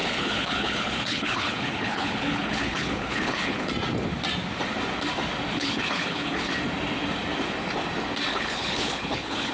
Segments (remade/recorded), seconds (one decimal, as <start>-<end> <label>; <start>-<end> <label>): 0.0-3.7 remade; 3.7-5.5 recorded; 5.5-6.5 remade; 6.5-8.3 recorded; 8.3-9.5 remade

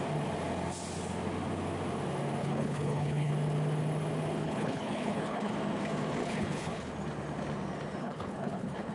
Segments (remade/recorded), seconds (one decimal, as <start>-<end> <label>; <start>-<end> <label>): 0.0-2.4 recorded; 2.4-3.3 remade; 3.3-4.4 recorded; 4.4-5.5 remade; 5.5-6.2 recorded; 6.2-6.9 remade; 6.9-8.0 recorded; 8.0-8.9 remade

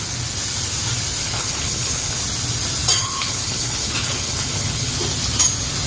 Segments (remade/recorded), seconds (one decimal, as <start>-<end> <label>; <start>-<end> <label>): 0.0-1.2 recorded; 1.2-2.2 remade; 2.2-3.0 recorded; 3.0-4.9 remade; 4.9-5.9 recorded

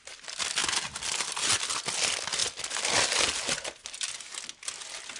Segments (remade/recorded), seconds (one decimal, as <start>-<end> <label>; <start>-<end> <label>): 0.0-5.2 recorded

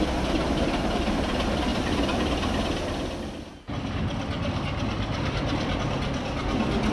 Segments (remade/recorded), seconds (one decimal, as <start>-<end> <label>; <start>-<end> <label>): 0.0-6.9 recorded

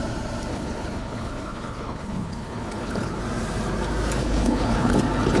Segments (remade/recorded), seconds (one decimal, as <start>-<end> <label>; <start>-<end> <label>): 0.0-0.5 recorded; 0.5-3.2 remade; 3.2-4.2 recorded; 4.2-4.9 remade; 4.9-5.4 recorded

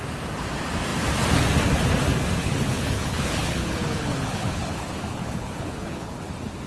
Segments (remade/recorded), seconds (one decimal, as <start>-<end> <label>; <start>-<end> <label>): 0.0-2.4 recorded; 2.4-6.3 remade; 6.3-6.7 recorded

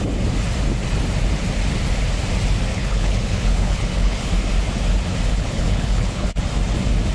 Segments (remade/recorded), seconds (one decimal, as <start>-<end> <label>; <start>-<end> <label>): 0.0-2.7 recorded; 2.7-4.3 remade; 4.3-5.3 recorded; 5.3-6.4 remade; 6.4-7.1 recorded